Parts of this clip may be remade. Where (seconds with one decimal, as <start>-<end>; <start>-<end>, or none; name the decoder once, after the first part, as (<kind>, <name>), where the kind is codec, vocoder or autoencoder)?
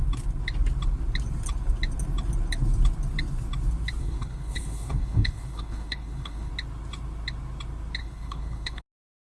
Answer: 4.0-6.5 (codec, HILCodec); 8.0-8.8